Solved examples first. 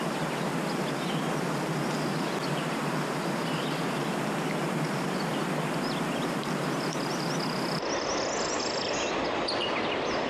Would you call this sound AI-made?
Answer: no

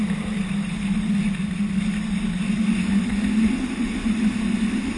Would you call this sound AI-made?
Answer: no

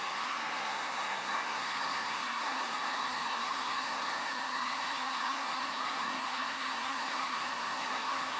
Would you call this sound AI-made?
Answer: yes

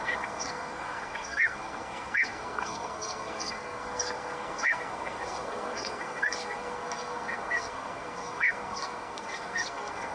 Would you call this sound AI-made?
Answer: yes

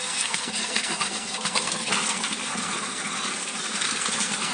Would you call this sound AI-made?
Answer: yes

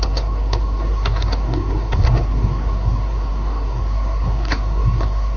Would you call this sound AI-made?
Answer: yes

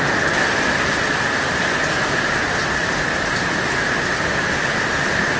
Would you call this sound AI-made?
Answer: no